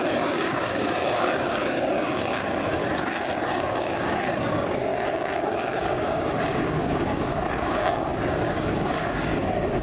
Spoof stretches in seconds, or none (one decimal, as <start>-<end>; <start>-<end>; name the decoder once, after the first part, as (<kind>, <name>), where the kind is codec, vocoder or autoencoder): 0.0-2.8 (codec, DAC); 3.5-9.8